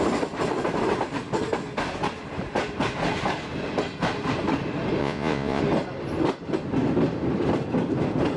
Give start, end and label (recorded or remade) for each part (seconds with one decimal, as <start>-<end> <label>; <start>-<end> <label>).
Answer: 0.0-5.0 recorded; 5.0-5.6 remade; 5.6-8.4 recorded